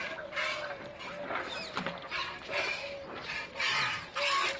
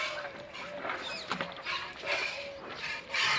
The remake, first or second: second